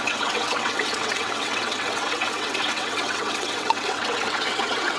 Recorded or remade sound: remade